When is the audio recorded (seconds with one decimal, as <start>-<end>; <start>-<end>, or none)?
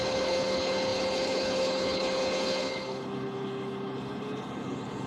none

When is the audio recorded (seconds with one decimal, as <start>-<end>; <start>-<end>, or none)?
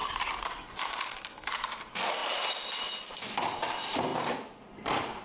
2.2-3.1; 4.1-4.6